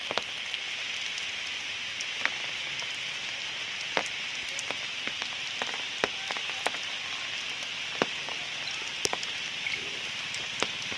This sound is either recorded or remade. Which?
recorded